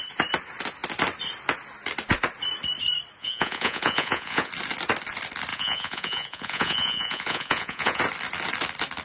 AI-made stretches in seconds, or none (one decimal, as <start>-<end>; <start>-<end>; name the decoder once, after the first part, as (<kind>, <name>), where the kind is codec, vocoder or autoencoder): 3.2-4.5 (vocoder, Vocos); 5.5-8.0

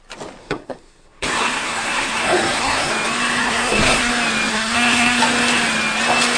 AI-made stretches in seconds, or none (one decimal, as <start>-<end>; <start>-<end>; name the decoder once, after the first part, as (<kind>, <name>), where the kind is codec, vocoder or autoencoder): 0.4-2.9 (codec, SNAC); 3.4-4.1; 4.5-5.2

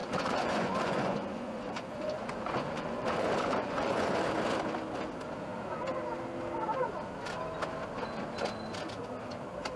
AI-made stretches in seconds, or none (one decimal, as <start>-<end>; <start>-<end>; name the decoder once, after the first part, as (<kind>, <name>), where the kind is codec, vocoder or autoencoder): 0.0-4.1 (vocoder, Vocos)

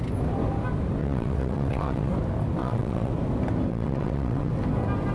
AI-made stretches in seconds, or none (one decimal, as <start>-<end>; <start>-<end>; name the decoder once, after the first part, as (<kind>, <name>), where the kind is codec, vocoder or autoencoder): 1.0-2.1 (vocoder, WaveNeXt); 2.6-3.1; 3.7-4.5

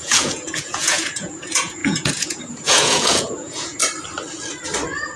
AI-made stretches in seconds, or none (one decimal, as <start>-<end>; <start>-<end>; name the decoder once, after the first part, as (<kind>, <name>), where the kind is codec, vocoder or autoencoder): 0.0-3.8 (vocoder, Vocos)

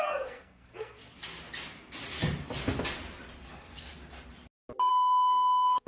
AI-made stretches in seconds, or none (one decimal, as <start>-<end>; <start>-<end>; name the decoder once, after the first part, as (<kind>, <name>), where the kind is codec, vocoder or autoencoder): 0.0-1.0 (codec, SNAC); 3.4-3.9; 4.9-5.9

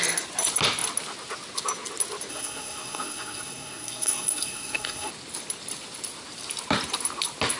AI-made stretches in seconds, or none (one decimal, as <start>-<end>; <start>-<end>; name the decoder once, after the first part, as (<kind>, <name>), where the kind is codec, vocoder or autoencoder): 2.3-5.1 (codec, SNAC)